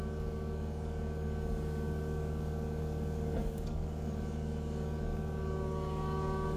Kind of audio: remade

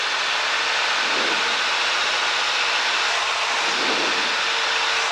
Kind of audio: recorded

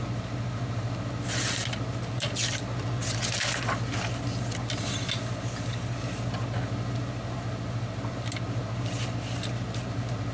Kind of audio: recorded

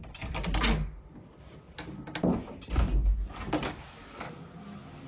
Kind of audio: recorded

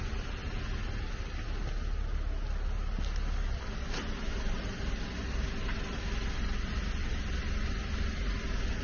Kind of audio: recorded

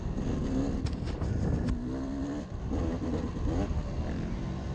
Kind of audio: recorded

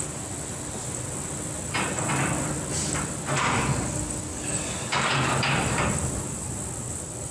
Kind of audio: remade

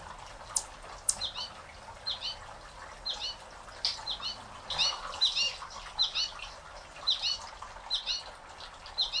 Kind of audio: recorded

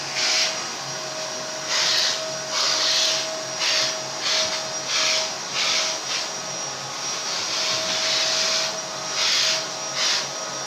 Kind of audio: recorded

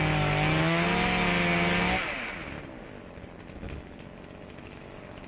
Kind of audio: recorded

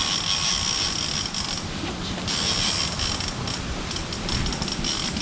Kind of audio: recorded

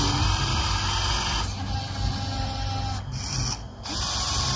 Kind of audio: recorded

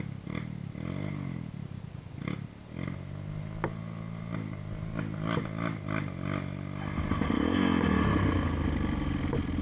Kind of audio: recorded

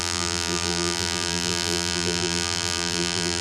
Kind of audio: remade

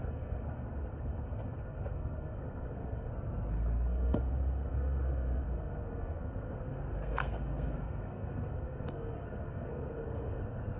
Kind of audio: remade